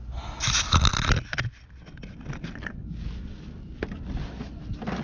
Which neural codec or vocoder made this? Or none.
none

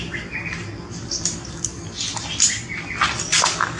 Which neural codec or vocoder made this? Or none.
vocoder, BigVGAN v2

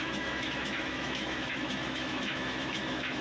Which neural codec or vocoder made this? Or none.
autoencoder, DAC-VAE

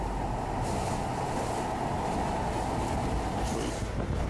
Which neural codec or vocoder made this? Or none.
none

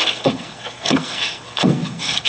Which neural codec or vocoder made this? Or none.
codec, SNAC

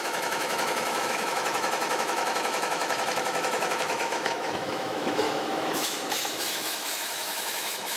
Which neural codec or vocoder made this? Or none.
autoencoder, DAC-VAE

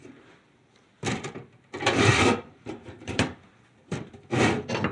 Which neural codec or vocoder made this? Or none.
vocoder, BigVGAN v2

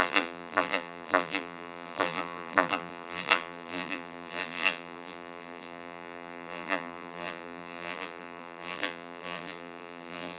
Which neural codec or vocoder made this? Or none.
vocoder, BigVGAN v2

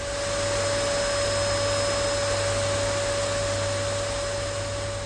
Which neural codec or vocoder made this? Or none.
none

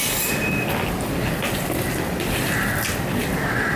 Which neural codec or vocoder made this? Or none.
vocoder, BigVGAN v2